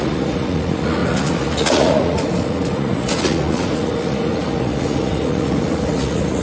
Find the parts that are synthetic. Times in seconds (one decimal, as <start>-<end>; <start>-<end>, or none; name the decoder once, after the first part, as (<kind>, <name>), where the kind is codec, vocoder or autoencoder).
0.0-6.4 (vocoder, Vocos)